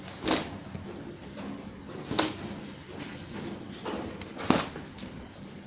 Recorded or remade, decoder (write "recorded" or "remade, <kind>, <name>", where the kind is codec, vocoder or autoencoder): recorded